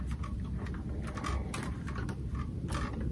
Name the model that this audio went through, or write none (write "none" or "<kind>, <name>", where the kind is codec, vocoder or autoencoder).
none